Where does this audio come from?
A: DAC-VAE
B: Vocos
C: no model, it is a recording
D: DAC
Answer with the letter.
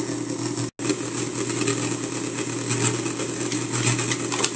C